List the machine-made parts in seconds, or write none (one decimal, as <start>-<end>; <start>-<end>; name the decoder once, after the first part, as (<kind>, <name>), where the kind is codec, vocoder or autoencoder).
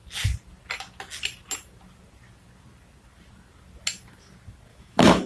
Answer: 4.7-5.3 (autoencoder, DAC-VAE)